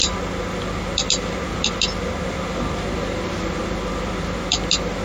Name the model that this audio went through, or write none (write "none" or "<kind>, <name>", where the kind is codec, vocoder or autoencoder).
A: none